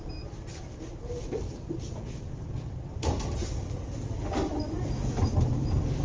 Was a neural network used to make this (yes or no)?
yes